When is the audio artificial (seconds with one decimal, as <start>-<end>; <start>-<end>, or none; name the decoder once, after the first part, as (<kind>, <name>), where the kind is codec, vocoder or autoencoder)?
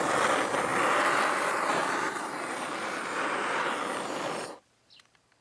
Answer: none